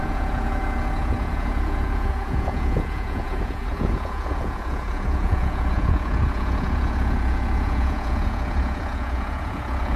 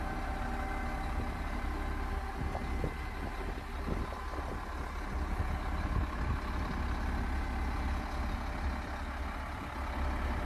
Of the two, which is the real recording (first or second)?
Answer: second